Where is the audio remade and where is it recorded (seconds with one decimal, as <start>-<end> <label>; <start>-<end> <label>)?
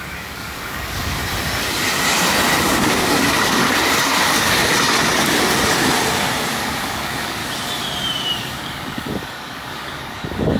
0.0-1.2 remade; 1.2-2.6 recorded; 2.6-3.6 remade; 3.6-6.5 recorded; 6.5-7.4 remade; 7.4-8.4 recorded; 8.4-10.6 remade